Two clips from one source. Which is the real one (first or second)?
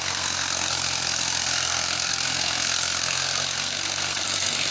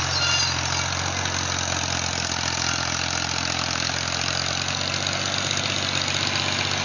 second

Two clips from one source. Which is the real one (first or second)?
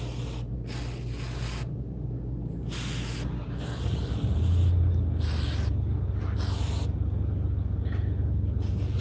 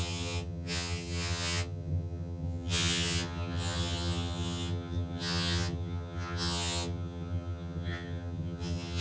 first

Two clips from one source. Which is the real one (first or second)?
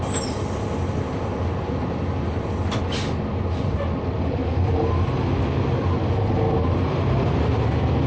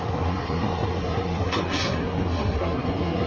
first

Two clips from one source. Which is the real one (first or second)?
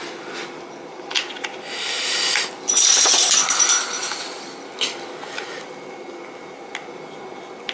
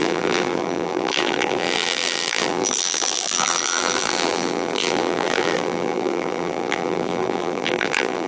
first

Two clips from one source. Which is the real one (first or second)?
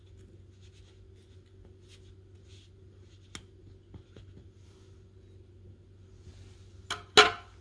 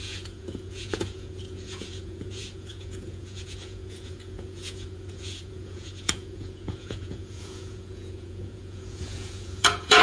first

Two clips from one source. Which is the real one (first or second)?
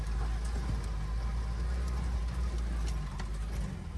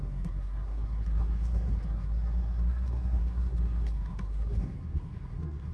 first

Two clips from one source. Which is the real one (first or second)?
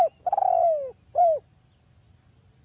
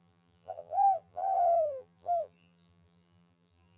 first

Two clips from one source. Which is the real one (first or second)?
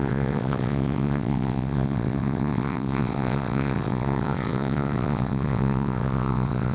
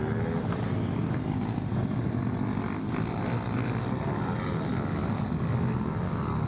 second